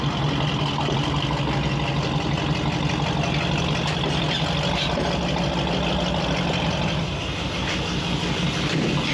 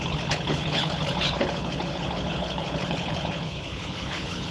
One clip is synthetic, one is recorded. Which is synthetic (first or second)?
second